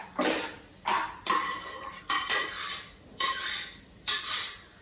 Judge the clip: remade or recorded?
remade